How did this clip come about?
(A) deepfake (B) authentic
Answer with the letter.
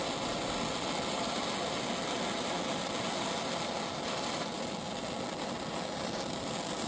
B